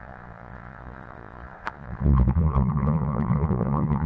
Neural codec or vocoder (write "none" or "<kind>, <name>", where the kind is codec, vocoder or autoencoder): vocoder, Vocos